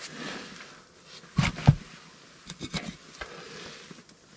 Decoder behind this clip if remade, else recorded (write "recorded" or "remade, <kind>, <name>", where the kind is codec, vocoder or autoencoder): recorded